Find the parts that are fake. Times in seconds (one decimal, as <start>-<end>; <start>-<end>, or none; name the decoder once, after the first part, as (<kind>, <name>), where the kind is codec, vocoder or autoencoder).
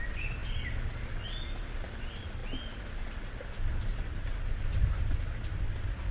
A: none